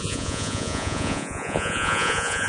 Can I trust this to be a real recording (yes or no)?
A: no